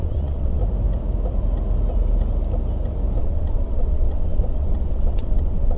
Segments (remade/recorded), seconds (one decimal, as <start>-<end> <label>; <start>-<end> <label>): 0.0-0.6 remade; 0.6-3.2 recorded; 3.2-5.8 remade